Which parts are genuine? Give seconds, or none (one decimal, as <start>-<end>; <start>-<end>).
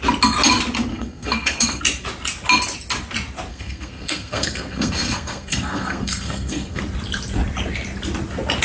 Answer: 0.0-0.9; 1.8-3.5; 6.8-8.6